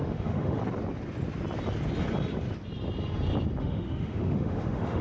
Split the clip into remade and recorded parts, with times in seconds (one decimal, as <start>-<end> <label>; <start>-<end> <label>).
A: 0.0-0.6 remade; 0.6-3.6 recorded; 3.6-5.0 remade